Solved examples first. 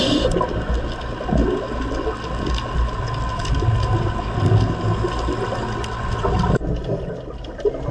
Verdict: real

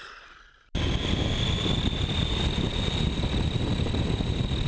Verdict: real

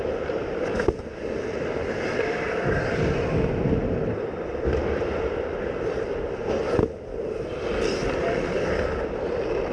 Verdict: real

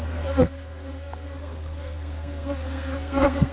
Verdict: fake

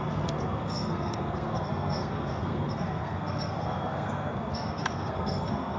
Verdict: fake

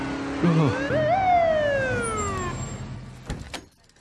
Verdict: real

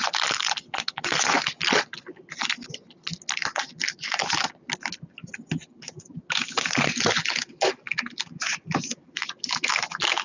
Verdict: real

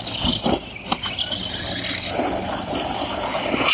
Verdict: real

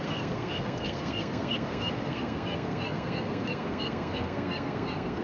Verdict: fake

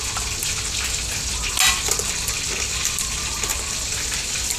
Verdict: real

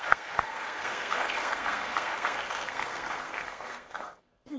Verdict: fake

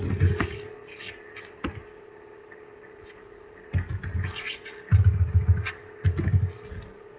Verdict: real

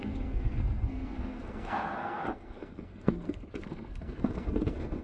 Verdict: fake